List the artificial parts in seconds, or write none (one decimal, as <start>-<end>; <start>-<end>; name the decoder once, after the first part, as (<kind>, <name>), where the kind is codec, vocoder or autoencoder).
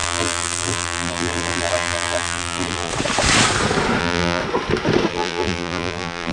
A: 0.0-2.9 (vocoder, BigVGAN v2); 4.0-4.4; 5.1-6.3